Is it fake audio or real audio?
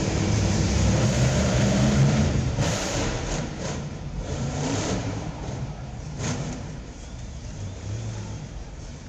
fake